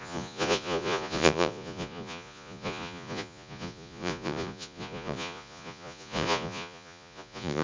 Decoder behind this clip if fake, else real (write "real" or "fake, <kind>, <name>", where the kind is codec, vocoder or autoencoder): fake, vocoder, Vocos